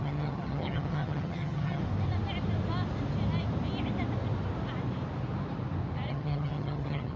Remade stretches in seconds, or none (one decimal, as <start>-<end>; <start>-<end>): 0.0-1.8; 6.1-7.2